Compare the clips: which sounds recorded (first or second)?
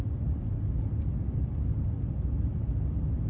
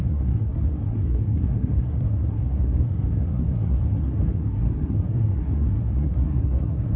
first